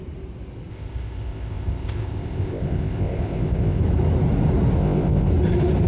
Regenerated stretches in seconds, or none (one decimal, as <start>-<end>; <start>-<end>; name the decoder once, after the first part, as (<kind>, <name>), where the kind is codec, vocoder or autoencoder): 0.7-3.8 (codec, ZipCodec); 4.8-5.3